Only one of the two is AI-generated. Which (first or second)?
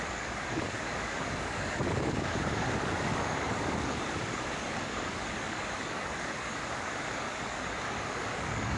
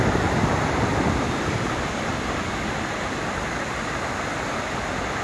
first